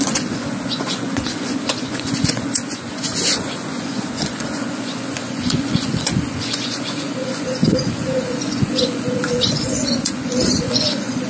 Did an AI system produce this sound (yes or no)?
yes